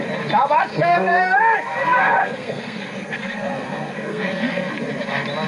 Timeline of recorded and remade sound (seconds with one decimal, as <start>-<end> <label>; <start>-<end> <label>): 0.0-0.7 recorded; 0.7-1.4 remade; 1.4-2.2 recorded; 2.2-4.7 remade; 4.7-5.5 recorded